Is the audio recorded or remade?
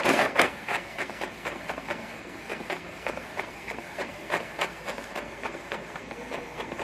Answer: remade